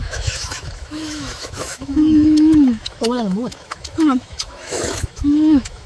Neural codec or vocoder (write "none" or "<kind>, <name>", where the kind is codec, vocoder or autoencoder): autoencoder, DAC-VAE